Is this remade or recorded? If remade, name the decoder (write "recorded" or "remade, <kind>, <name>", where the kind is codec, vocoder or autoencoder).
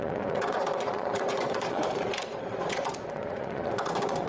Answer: remade, vocoder, Vocos